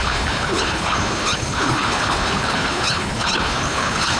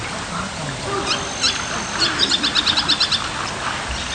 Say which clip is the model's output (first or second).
first